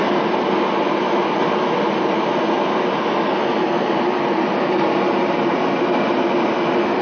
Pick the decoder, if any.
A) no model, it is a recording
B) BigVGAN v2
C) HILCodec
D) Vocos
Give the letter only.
A